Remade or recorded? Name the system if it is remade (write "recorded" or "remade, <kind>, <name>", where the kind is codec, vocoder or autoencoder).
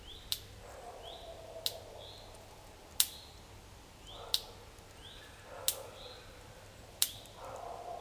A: recorded